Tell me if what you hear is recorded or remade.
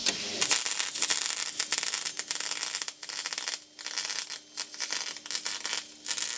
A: recorded